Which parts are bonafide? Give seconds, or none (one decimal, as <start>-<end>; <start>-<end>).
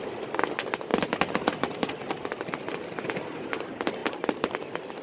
0.0-4.0